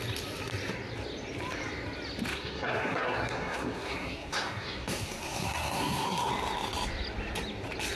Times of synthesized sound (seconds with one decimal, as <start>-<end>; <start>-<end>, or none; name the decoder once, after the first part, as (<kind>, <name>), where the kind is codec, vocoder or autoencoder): 2.3-6.3 (codec, SNAC)